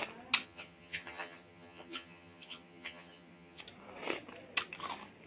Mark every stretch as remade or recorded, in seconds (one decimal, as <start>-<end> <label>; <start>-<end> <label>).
0.0-0.4 recorded; 0.4-3.6 remade; 3.6-5.3 recorded